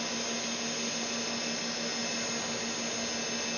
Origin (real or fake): real